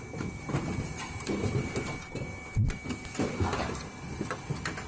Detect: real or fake real